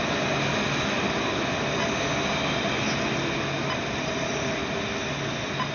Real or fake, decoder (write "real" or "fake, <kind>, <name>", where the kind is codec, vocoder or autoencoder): real